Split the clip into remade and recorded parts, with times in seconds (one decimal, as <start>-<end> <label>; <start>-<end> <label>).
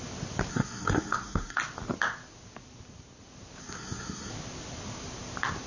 0.0-0.5 recorded; 0.5-1.6 remade; 1.6-3.6 recorded; 3.6-4.3 remade; 4.3-5.7 recorded